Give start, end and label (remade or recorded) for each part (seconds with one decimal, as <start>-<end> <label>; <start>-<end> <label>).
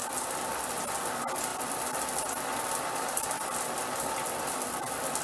0.0-5.2 recorded